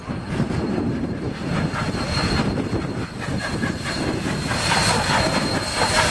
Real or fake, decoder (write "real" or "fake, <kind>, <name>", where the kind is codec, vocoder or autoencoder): fake, vocoder, BigVGAN v2